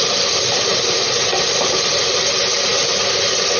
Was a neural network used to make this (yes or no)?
no